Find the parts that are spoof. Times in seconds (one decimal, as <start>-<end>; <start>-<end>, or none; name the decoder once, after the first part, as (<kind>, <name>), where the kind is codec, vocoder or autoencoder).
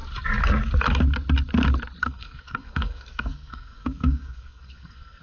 2.0-5.2 (codec, SNAC)